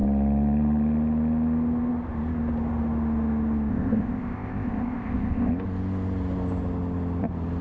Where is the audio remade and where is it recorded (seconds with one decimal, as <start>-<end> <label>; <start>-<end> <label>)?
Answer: 0.0-3.7 recorded; 3.7-5.5 remade; 5.5-7.6 recorded